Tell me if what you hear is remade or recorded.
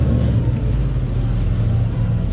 recorded